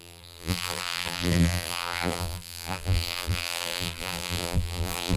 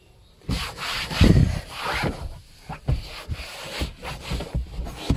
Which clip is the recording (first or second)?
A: second